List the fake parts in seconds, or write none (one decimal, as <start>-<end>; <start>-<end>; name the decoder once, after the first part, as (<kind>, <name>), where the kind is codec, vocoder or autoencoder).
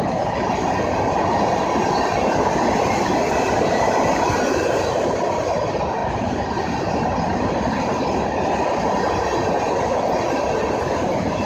none